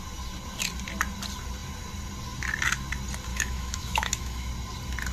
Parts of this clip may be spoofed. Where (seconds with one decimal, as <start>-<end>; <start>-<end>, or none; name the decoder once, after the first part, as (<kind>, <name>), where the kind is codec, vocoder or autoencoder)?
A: 3.3-4.5 (autoencoder, DAC-VAE)